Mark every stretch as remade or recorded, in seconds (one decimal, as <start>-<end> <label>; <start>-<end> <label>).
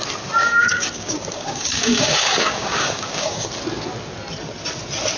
0.0-0.4 recorded; 0.4-3.5 remade; 3.5-5.2 recorded